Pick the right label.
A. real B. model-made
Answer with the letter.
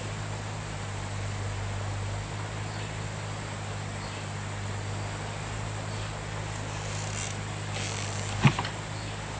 A